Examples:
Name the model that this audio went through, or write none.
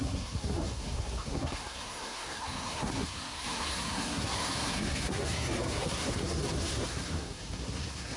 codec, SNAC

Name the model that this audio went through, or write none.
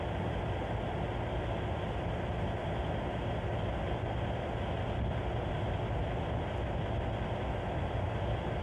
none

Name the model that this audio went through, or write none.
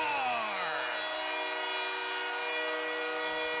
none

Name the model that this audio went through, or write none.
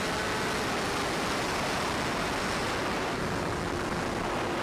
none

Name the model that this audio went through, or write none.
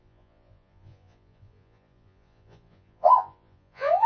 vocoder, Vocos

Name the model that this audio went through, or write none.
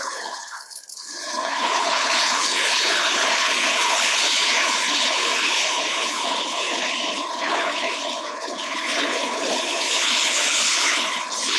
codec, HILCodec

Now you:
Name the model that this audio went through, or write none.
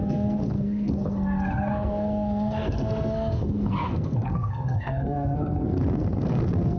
codec, SNAC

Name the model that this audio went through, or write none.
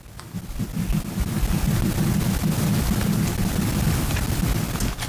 none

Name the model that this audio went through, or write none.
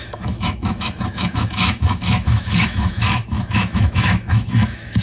autoencoder, DAC-VAE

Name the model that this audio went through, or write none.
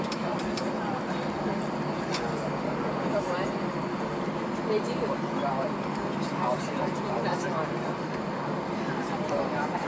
none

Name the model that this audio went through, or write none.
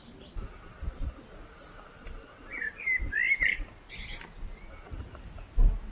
none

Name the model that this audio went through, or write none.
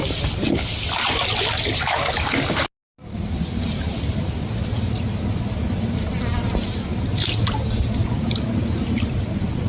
none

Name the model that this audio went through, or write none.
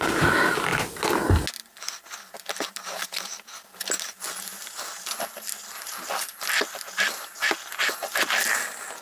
none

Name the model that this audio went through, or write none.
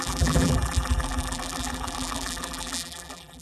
vocoder, BigVGAN v2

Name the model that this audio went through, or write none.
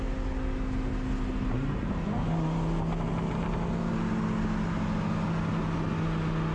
none